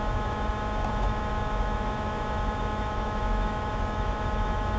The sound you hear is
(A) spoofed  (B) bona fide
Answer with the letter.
A